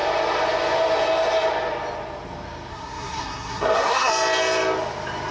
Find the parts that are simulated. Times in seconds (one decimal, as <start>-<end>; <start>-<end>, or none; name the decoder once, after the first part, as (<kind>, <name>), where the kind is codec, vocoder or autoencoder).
2.7-4.1 (codec, SNAC)